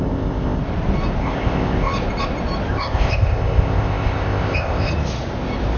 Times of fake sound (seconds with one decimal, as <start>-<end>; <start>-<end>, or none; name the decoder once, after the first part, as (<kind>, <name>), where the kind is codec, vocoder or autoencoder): 0.0-0.6 (codec, ZipCodec); 1.2-1.9; 2.7-4.9